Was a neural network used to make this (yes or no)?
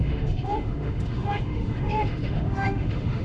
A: yes